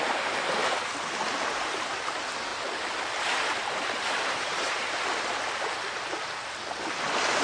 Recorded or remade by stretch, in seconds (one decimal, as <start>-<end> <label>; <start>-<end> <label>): 0.0-2.5 recorded; 2.5-4.9 remade; 4.9-7.4 recorded